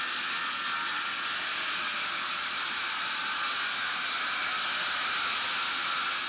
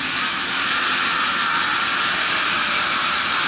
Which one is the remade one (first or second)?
second